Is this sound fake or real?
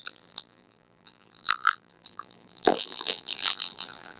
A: fake